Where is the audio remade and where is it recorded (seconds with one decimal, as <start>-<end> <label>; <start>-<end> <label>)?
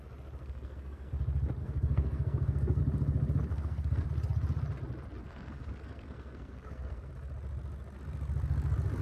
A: 0.0-0.4 recorded; 0.4-1.1 remade; 1.1-1.6 recorded; 1.6-2.8 remade; 2.8-3.5 recorded; 3.5-4.1 remade; 4.1-5.2 recorded; 5.2-7.1 remade; 7.1-9.0 recorded